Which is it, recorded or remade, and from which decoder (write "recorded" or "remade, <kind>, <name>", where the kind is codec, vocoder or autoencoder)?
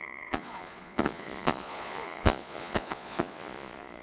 remade, vocoder, Vocos